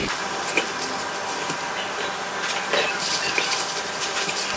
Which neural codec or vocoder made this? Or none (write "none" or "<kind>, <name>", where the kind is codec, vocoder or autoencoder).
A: none